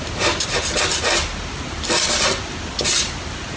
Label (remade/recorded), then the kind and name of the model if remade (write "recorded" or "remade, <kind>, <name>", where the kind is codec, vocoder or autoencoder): recorded